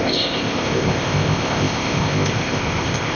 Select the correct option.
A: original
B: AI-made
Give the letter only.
B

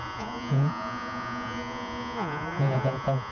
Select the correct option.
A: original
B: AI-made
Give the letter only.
B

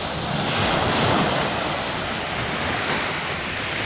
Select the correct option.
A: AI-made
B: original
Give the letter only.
B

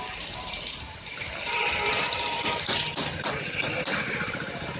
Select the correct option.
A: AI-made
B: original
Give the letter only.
A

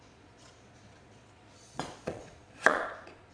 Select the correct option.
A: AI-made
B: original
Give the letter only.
A